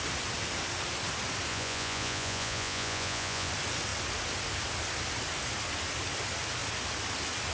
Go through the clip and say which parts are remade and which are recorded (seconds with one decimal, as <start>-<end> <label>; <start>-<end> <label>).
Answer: 0.0-1.5 recorded; 1.5-3.5 remade; 3.5-7.5 recorded